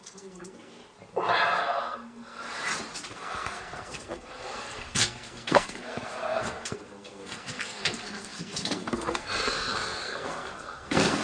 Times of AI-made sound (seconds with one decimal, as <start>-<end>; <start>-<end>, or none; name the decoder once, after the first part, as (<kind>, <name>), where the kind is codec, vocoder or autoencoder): 0.0-0.8 (codec, SNAC); 1.6-2.4; 3.1-11.2